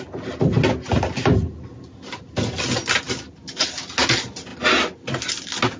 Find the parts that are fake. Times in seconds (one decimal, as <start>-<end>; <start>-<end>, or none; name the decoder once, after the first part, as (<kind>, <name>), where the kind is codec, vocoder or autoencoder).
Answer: none